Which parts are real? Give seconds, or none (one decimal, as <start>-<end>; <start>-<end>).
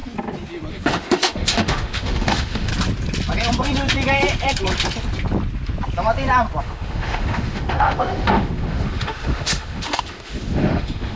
0.0-0.7; 2.7-6.6